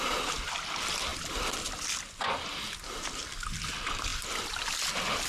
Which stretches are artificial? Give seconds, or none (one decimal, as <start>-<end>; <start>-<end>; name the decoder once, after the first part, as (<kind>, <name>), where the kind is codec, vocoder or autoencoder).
none